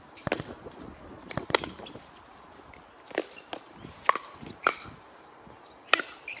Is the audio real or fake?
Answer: real